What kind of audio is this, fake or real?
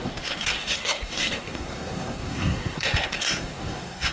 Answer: fake